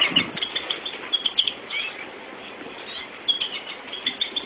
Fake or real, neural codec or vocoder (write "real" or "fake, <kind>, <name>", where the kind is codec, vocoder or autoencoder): real